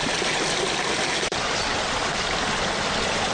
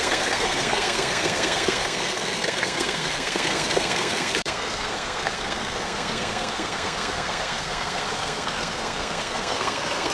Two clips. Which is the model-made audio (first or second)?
second